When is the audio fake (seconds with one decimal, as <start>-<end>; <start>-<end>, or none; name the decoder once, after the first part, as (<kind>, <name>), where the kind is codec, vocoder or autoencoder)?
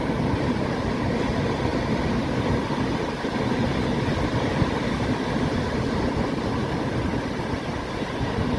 none